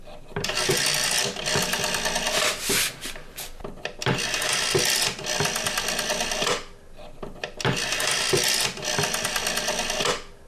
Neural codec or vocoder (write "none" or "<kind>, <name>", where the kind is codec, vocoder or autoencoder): none